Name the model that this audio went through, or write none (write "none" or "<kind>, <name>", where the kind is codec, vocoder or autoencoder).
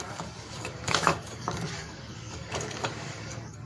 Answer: codec, DAC